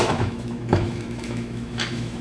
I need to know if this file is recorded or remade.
remade